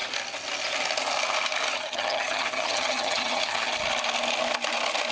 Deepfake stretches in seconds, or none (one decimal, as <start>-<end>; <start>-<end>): 1.7-3.7